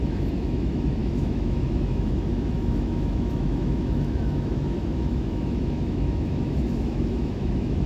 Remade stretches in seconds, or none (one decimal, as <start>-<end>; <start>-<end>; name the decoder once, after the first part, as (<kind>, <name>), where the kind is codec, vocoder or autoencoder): 0.0-7.9 (autoencoder, DAC-VAE)

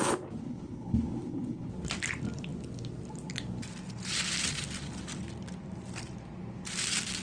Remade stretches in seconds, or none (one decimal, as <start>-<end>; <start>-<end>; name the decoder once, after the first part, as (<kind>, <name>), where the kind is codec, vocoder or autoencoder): 0.4-1.7 (codec, HILCodec)

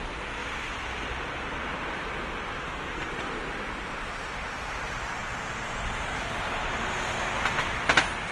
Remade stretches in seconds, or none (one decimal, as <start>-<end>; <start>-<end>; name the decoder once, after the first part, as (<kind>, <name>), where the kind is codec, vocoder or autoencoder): 2.6-3.1 (codec, SNAC)

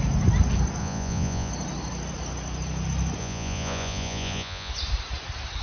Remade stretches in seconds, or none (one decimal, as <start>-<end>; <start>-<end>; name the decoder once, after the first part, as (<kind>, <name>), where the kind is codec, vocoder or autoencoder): 0.8-1.5 (vocoder, Vocos); 3.2-4.7

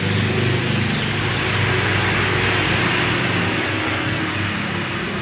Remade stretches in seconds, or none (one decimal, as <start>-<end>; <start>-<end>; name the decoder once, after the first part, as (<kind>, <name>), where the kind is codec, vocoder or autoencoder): 3.7-4.2 (codec, SNAC)

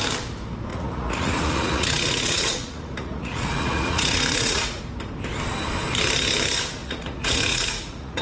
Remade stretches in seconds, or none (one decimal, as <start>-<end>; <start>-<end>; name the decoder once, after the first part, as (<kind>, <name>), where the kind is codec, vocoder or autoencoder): 0.7-4.8 (vocoder, Vocos); 6.8-8.2

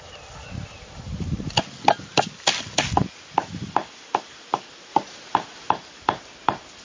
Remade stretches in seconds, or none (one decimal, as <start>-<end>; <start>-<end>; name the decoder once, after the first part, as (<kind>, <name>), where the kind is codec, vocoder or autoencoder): none